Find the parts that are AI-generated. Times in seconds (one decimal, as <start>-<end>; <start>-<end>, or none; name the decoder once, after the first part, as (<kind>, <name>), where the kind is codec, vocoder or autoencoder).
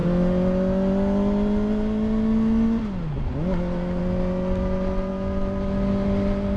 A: none